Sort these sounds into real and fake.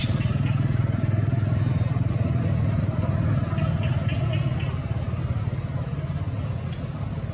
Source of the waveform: real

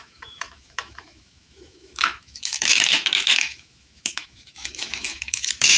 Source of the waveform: fake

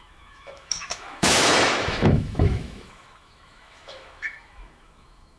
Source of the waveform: fake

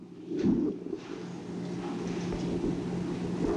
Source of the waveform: real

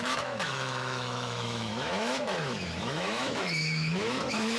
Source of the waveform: fake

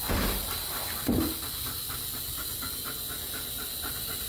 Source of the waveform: real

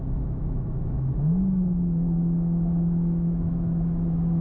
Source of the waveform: fake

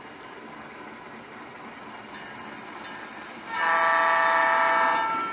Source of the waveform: real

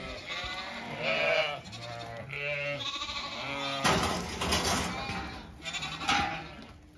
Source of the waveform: real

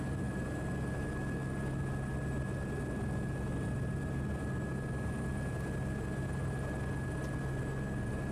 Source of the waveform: real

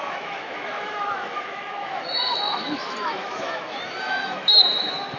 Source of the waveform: fake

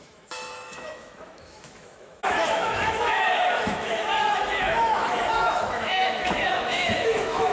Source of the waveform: fake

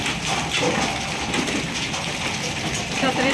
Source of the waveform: real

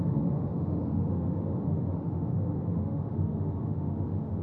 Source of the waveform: fake